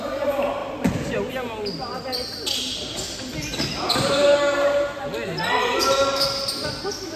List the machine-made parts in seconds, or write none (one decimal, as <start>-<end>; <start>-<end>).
none